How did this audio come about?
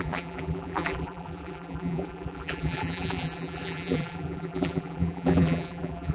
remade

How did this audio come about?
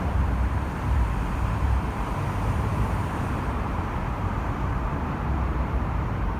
remade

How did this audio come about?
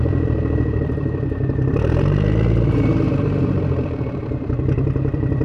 remade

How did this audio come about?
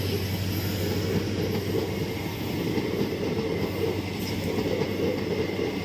recorded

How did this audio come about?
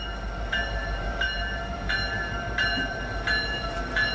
remade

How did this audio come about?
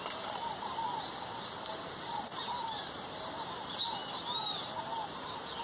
remade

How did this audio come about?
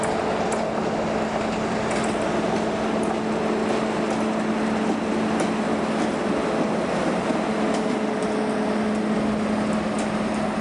recorded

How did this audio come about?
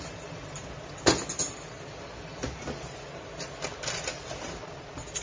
recorded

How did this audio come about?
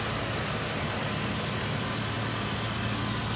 recorded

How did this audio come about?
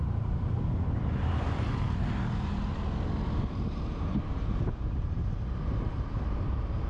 remade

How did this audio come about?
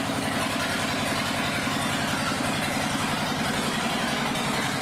recorded